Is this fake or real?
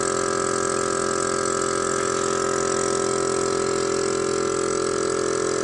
real